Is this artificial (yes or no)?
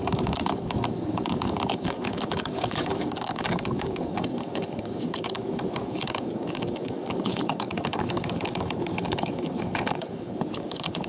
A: yes